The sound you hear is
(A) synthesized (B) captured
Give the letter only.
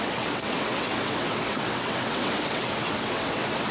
A